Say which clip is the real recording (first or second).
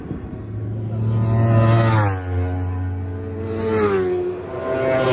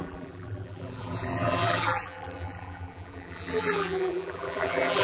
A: first